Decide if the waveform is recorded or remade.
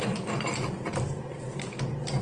recorded